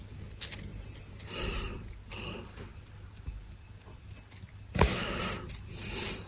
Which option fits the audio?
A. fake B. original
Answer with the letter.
B